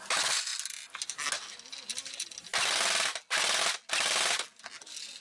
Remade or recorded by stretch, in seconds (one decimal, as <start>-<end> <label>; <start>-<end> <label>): 0.0-5.2 recorded